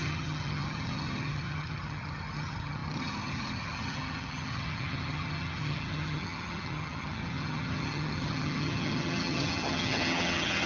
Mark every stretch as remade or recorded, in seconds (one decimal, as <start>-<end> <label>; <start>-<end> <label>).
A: 0.0-10.7 remade